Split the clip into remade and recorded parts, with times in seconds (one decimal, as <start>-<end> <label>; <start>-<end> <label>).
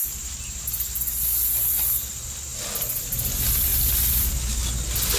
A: 0.0-5.2 recorded